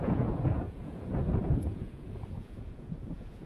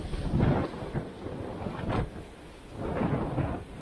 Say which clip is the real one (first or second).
second